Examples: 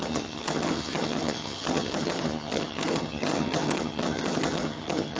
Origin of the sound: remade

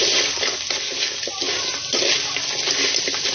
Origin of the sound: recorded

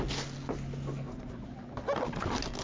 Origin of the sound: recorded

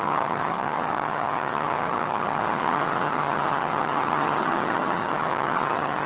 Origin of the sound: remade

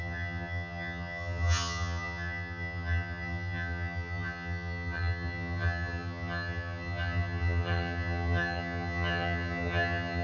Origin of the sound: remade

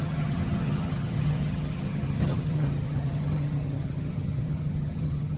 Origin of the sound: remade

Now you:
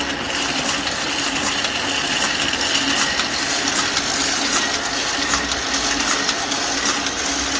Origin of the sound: recorded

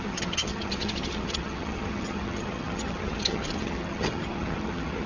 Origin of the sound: remade